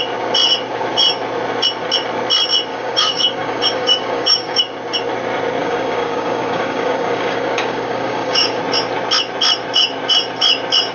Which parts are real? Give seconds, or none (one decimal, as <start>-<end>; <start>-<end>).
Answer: 0.0-2.7; 4.6-5.6; 8.6-10.9